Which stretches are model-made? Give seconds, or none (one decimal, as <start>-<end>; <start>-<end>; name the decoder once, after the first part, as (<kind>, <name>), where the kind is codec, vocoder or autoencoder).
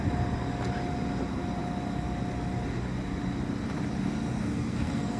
4.4-5.2 (codec, SNAC)